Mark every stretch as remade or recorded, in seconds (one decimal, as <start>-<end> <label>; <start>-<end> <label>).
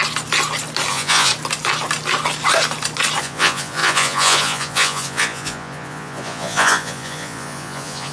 0.0-0.9 recorded; 0.9-1.3 remade; 1.3-3.2 recorded; 3.2-8.1 remade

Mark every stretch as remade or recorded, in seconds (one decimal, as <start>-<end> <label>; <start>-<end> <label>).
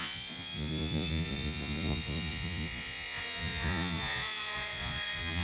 0.0-5.4 remade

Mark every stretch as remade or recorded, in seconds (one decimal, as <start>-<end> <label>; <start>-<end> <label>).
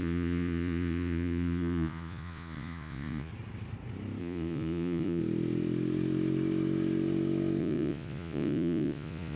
0.0-3.3 remade; 3.3-4.2 recorded; 4.2-5.2 remade; 5.2-7.6 recorded; 7.6-9.4 remade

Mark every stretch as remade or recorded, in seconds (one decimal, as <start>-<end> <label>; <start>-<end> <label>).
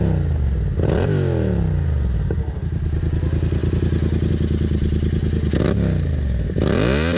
0.0-7.2 recorded